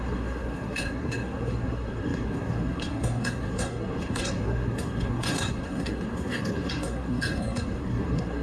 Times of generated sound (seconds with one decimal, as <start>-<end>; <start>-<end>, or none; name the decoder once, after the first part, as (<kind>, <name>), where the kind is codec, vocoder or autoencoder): 0.0-8.4 (codec, SNAC)